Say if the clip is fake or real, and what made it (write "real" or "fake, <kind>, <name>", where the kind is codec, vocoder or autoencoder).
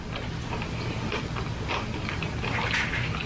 real